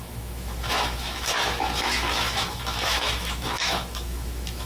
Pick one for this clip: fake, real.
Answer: fake